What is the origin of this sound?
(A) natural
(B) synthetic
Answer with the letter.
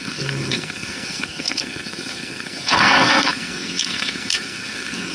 B